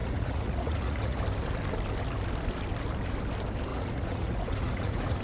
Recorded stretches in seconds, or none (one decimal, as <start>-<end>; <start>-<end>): 1.2-3.7